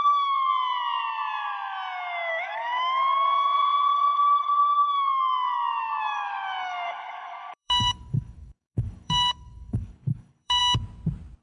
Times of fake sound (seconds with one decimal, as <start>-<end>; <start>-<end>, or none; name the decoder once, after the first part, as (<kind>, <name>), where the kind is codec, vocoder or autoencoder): 0.0-0.5 (codec, DAC); 2.3-10.6